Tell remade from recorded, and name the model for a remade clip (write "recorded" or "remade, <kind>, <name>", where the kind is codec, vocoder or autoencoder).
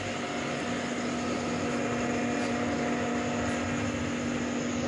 recorded